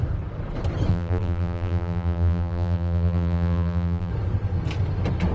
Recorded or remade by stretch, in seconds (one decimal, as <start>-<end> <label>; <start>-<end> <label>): 0.0-0.9 recorded; 0.9-4.1 remade; 4.1-5.3 recorded